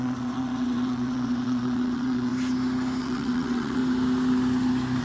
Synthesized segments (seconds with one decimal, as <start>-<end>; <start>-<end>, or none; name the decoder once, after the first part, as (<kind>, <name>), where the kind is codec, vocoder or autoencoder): 0.0-2.3 (vocoder, WaveNeXt); 3.0-3.8